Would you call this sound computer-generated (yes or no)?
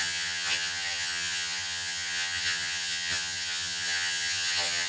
yes